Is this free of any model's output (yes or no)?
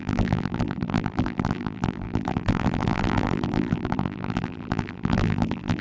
no